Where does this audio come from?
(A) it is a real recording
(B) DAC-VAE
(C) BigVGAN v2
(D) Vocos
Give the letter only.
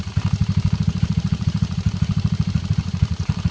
C